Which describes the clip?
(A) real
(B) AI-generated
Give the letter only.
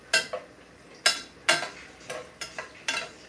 A